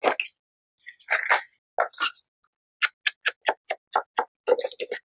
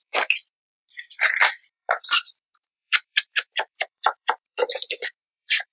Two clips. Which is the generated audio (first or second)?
second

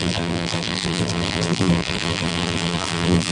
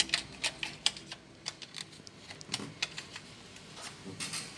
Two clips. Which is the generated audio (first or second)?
first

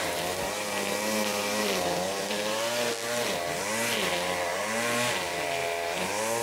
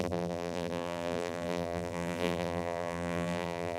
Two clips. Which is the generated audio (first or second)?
second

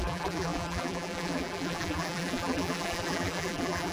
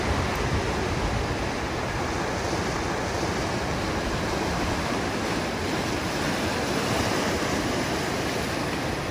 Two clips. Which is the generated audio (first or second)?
first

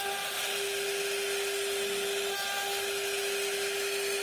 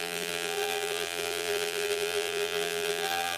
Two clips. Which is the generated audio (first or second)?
second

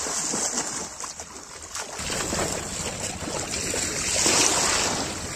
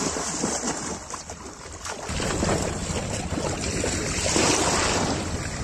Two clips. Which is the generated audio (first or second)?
second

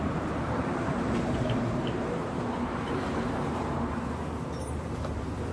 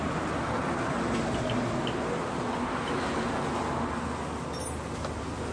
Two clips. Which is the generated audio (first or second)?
first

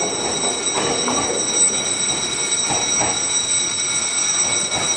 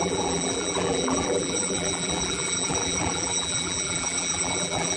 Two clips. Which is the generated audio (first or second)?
second